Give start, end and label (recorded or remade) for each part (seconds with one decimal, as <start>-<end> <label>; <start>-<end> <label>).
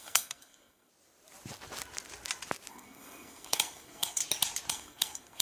0.0-0.9 remade; 0.9-2.7 recorded; 2.7-4.2 remade; 4.2-4.7 recorded; 4.7-5.4 remade